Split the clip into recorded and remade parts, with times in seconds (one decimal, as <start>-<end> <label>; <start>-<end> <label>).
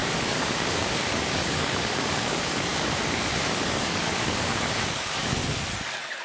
0.0-5.4 remade; 5.4-6.2 recorded